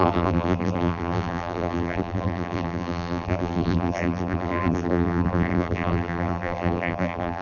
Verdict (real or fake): fake